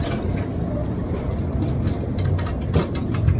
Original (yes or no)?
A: yes